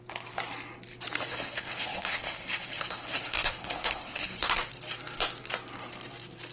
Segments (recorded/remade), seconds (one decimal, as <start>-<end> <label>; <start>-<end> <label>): 0.0-1.3 recorded; 1.3-4.5 remade; 4.5-6.5 recorded